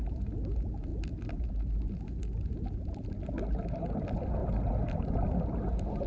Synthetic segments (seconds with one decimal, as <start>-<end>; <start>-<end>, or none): 0.0-0.9; 1.5-4.4; 5.0-6.1